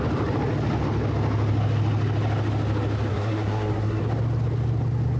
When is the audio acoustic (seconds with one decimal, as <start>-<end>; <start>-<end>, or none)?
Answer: 0.0-3.1; 4.0-5.2